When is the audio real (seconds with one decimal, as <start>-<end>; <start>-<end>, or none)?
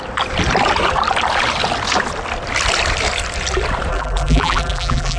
0.0-3.9